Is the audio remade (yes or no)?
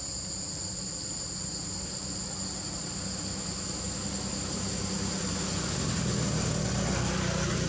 no